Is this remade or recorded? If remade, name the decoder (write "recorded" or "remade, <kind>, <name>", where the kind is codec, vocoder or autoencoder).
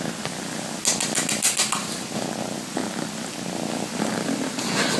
recorded